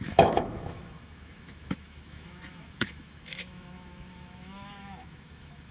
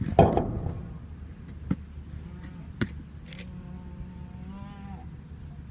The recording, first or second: second